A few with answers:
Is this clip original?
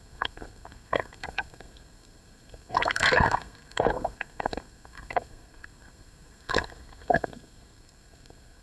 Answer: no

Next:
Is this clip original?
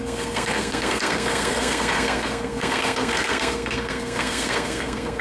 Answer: no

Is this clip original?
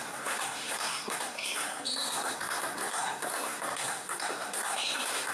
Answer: no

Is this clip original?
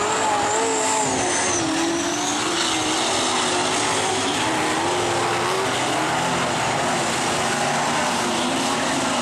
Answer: yes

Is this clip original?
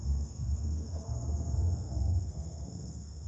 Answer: no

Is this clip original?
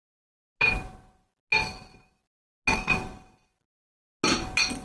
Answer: yes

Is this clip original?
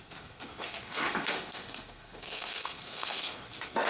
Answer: no